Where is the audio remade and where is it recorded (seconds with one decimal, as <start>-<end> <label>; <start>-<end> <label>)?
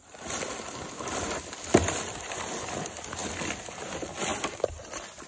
0.0-5.3 recorded